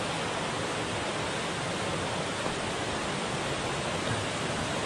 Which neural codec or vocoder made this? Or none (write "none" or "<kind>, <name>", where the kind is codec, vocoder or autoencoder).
none